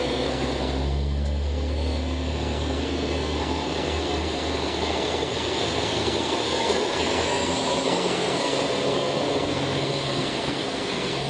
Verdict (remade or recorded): remade